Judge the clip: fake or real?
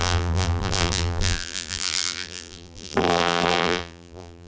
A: fake